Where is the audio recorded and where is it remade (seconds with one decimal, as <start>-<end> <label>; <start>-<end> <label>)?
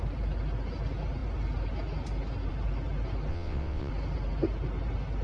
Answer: 0.0-3.3 recorded; 3.3-3.9 remade; 3.9-5.2 recorded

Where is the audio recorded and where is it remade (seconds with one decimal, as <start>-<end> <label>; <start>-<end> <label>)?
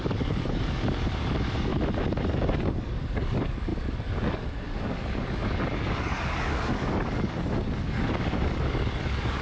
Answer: 0.0-1.7 remade; 1.7-2.4 recorded; 2.4-9.4 remade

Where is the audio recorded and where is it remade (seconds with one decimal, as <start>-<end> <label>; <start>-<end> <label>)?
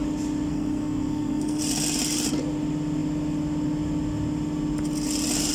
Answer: 0.0-0.5 recorded; 0.5-1.6 remade; 1.6-5.5 recorded